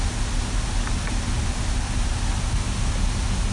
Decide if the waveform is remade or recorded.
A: recorded